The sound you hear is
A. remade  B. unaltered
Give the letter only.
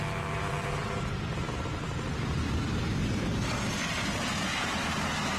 B